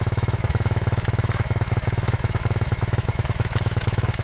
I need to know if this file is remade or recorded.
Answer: remade